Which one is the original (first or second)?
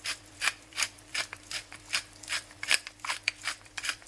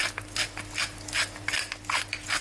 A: second